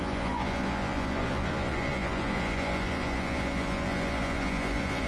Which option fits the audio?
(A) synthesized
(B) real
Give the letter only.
A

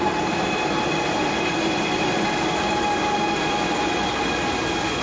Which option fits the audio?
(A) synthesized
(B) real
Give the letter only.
B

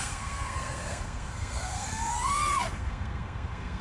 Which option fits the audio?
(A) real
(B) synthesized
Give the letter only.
B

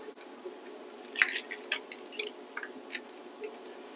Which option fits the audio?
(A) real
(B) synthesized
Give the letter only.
A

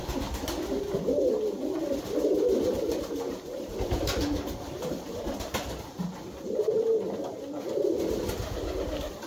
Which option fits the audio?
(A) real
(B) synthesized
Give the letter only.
A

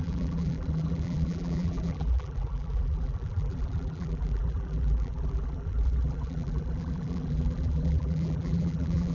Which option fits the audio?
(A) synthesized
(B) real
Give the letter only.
A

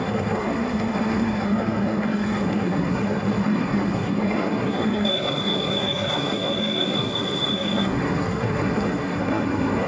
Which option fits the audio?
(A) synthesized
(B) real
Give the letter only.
A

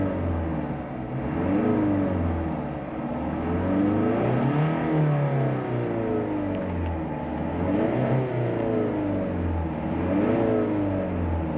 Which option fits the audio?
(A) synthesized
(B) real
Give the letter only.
B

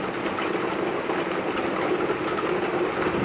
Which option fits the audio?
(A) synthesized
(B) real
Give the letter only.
B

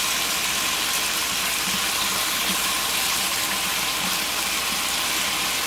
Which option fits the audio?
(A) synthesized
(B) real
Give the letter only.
B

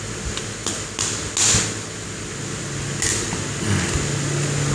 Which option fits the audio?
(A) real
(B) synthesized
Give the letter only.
A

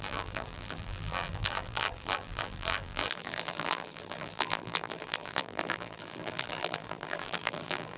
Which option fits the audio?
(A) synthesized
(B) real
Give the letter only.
A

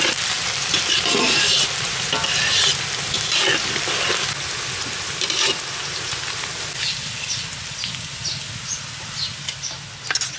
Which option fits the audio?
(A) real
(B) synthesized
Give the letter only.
A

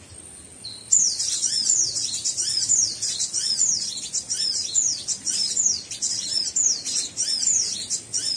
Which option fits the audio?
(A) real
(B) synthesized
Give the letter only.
A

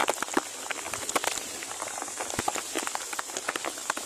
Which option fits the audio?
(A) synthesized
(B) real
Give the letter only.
B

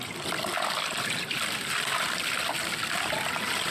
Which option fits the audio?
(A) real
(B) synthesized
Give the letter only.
A